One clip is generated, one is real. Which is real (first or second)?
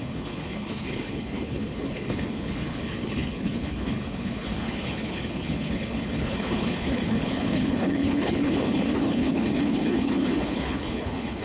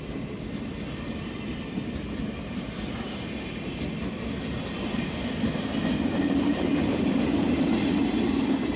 second